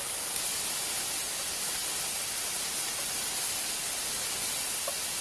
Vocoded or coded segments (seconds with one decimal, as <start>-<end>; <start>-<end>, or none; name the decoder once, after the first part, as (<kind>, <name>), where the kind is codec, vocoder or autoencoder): none